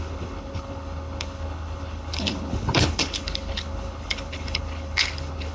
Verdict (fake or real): fake